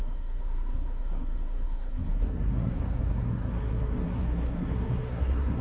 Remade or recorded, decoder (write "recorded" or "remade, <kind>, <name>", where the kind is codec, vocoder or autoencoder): remade, codec, SNAC